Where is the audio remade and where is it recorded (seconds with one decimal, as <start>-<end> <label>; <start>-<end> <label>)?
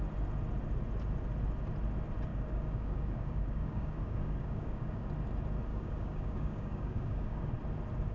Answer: 0.0-2.3 recorded; 2.3-5.1 remade; 5.1-5.7 recorded; 5.7-7.5 remade; 7.5-8.1 recorded